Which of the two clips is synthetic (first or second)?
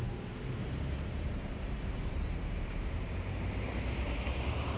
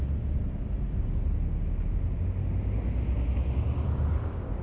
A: first